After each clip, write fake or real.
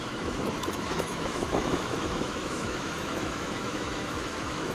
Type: fake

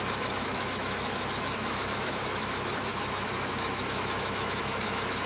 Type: fake